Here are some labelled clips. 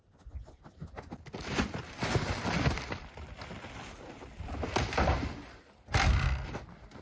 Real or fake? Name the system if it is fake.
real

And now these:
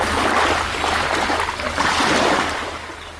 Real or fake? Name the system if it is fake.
real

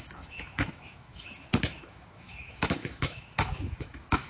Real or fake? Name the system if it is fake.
fake, autoencoder, DAC-VAE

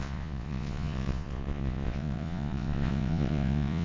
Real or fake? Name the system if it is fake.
fake, vocoder, Vocos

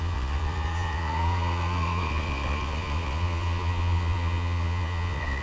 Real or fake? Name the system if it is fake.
fake, vocoder, Vocos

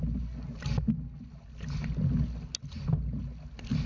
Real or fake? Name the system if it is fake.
real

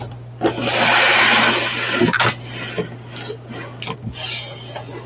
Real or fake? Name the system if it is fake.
real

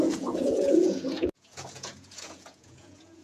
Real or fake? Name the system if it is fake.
fake, vocoder, Vocos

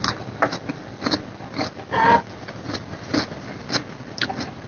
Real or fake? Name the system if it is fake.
real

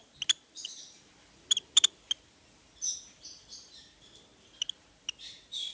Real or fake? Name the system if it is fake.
real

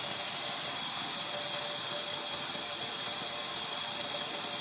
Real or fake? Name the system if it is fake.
real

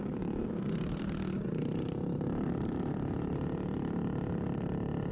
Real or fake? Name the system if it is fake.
fake, vocoder, BigVGAN v2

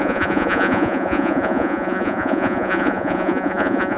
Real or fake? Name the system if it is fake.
fake, vocoder, Vocos